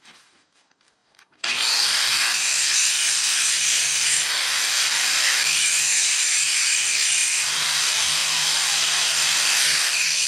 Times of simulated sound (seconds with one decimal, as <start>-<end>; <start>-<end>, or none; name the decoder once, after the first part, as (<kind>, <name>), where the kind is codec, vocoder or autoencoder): 0.0-10.3 (codec, DAC)